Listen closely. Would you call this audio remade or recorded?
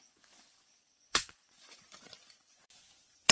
remade